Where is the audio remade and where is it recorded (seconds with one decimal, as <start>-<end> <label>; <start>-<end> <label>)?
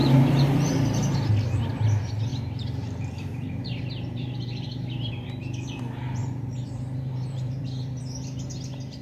0.0-1.3 remade; 1.3-2.3 recorded; 2.3-5.1 remade; 5.1-6.2 recorded; 6.2-8.0 remade; 8.0-9.0 recorded